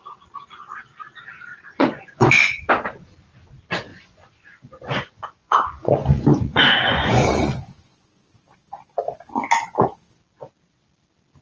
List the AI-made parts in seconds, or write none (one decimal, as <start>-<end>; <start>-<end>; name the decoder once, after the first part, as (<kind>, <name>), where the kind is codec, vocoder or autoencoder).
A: 1.5-2.7 (vocoder, Vocos); 3.9-8.2